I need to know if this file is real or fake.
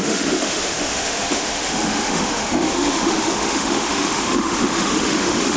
fake